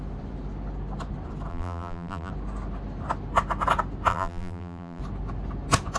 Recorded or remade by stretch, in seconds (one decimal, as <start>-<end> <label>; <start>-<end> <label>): 0.0-1.5 recorded; 1.5-2.3 remade; 2.3-4.1 recorded; 4.1-5.0 remade; 5.0-6.0 recorded